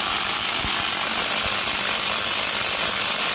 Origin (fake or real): real